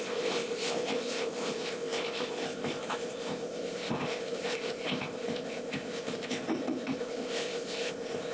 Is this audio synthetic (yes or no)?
yes